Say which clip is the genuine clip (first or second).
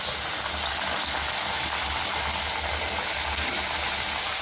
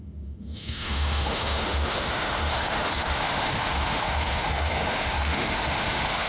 first